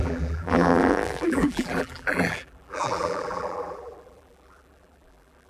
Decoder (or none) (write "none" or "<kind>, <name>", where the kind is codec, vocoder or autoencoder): vocoder, BigVGAN v2